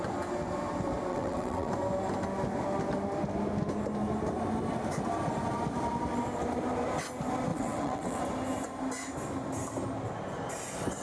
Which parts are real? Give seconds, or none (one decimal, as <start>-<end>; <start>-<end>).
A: 0.0-1.1; 1.7-7.5; 8.2-11.0